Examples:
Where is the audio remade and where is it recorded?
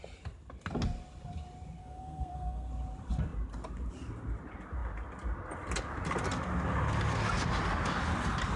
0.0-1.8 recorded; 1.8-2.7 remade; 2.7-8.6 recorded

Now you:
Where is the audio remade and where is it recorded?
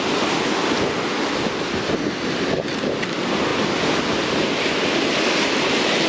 0.0-6.1 recorded